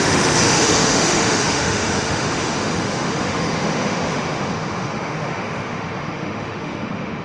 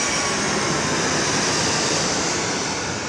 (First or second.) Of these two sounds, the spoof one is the first